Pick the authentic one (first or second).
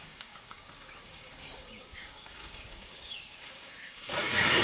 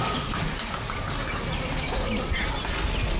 second